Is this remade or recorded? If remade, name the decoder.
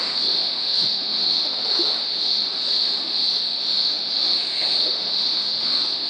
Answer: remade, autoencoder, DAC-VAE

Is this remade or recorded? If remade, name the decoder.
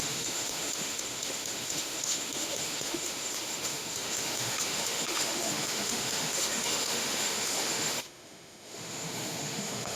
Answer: remade, autoencoder, DAC-VAE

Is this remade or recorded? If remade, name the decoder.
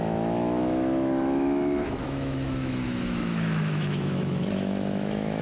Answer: remade, autoencoder, DAC-VAE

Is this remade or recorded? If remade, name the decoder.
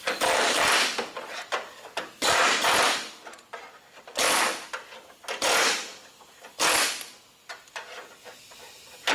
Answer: recorded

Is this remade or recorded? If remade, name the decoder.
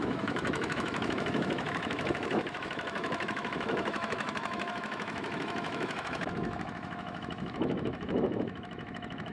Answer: remade, autoencoder, DAC-VAE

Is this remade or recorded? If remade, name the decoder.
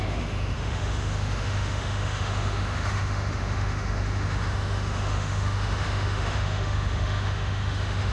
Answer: remade, autoencoder, DAC-VAE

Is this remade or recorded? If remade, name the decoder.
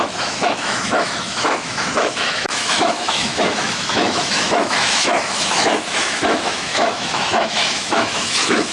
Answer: remade, autoencoder, DAC-VAE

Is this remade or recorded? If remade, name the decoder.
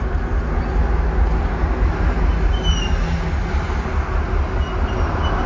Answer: recorded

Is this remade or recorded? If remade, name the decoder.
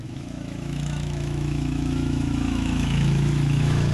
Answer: remade, autoencoder, DAC-VAE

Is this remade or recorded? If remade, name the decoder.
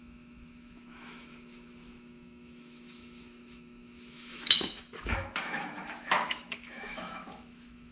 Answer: remade, autoencoder, DAC-VAE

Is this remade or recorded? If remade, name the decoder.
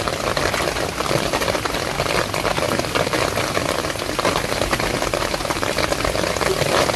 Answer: recorded